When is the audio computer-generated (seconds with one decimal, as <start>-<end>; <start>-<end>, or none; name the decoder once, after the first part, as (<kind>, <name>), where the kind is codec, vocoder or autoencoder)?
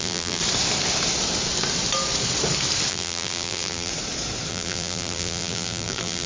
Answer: 0.0-0.4 (vocoder, BigVGAN v2); 2.9-3.9; 4.5-6.3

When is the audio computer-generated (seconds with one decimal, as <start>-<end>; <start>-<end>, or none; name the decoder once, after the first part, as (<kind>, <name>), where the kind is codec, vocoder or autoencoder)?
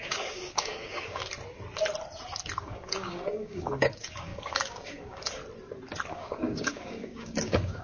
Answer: 0.0-1.2 (codec, DAC); 2.6-5.4; 6.1-7.8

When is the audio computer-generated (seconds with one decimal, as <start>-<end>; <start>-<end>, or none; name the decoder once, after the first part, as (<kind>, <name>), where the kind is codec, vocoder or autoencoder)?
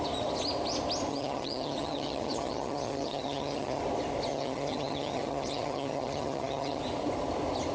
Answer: 1.1-3.8 (vocoder, HiFi-GAN); 4.3-6.8